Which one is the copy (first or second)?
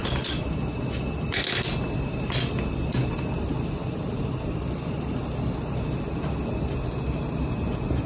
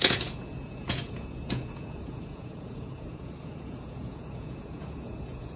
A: second